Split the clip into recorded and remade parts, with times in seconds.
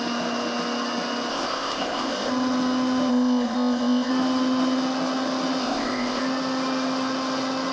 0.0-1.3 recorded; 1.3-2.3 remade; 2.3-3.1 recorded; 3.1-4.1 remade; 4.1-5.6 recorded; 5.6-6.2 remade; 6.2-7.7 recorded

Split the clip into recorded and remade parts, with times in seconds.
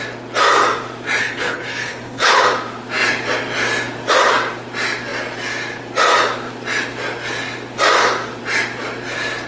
0.0-1.2 recorded; 1.2-2.4 remade; 2.4-9.5 recorded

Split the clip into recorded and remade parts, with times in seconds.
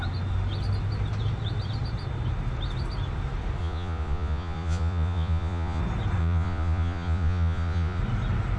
0.0-3.6 recorded; 3.6-5.8 remade; 5.8-6.2 recorded; 6.2-8.0 remade; 8.0-8.6 recorded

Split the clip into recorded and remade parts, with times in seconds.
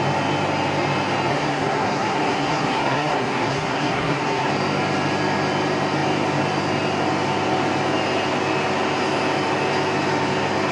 0.0-1.3 recorded; 1.3-4.5 remade; 4.5-10.7 recorded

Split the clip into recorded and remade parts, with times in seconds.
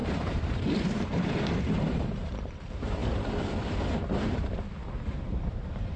0.0-6.0 remade